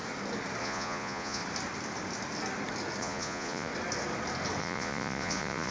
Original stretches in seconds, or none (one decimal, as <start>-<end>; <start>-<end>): 0.0-0.6; 1.4-3.0; 3.7-4.6